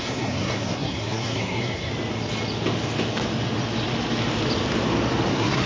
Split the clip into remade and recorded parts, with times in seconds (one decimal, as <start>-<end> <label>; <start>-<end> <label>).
0.0-1.9 remade; 1.9-5.3 recorded; 5.3-5.7 remade